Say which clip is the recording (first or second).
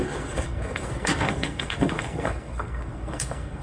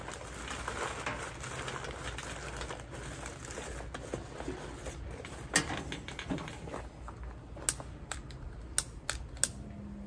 second